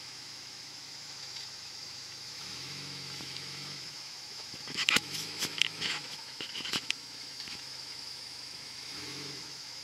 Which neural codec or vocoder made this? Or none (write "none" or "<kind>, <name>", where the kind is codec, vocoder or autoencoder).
autoencoder, DAC-VAE